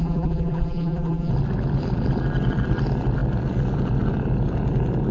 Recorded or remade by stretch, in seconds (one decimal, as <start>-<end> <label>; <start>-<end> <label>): 0.0-1.3 remade; 1.3-5.1 recorded